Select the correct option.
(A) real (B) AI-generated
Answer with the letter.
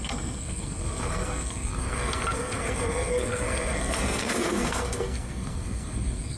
B